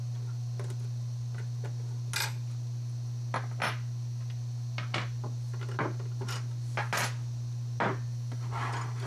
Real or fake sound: real